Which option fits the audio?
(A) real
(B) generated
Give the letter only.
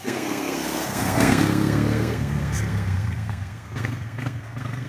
B